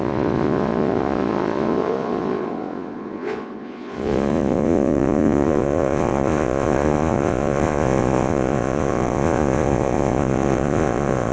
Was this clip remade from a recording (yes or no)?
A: yes